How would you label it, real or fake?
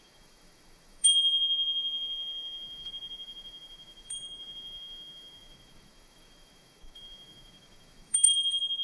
fake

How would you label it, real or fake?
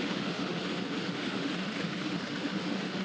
fake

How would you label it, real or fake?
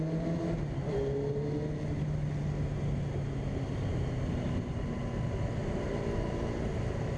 real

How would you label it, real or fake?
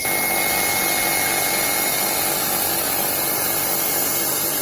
real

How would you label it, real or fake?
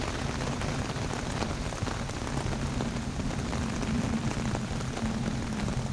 real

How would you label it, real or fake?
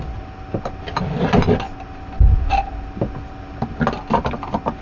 real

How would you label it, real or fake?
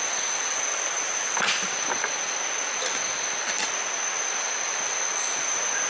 real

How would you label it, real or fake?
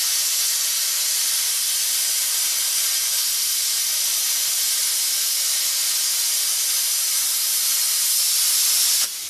real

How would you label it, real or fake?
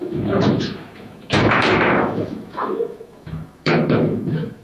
fake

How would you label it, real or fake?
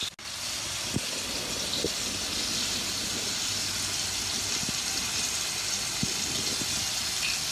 real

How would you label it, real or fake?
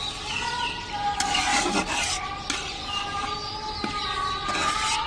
real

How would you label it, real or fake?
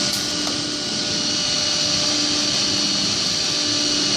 real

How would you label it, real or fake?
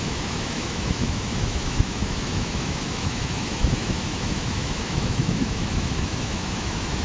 fake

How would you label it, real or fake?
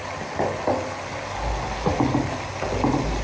real